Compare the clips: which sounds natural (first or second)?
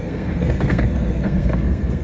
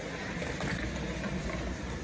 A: second